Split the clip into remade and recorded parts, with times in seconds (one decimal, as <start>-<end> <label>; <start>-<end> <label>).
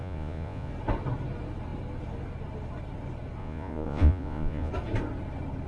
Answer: 0.0-0.7 remade; 0.7-3.4 recorded; 3.4-4.7 remade; 4.7-5.7 recorded